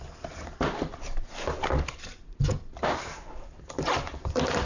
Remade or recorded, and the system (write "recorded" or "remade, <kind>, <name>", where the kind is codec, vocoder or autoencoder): recorded